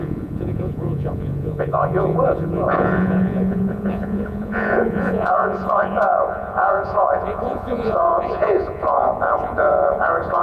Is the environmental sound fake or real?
fake